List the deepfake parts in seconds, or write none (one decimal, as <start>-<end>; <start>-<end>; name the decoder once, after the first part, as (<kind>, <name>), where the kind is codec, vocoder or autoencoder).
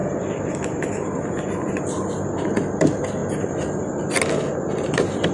0.0-1.8 (vocoder, BigVGAN v2); 3.2-3.8